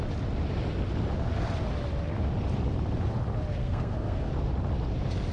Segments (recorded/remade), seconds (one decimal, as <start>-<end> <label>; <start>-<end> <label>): 0.0-3.6 recorded; 3.6-4.3 remade; 4.3-5.3 recorded

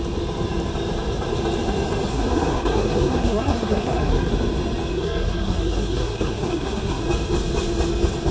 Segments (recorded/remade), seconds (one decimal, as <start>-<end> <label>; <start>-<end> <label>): 0.0-2.1 recorded; 2.1-4.3 remade; 4.3-4.9 recorded; 4.9-7.0 remade; 7.0-8.3 recorded

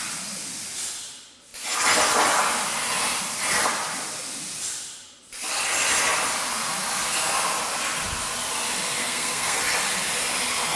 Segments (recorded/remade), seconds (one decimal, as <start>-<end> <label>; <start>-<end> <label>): 0.0-9.0 recorded; 9.0-9.6 remade; 9.6-10.8 recorded

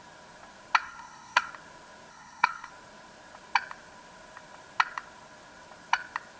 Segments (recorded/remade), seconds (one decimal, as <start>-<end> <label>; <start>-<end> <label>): 0.0-0.8 recorded; 0.8-1.5 remade; 1.5-2.1 recorded; 2.1-2.7 remade; 2.7-6.4 recorded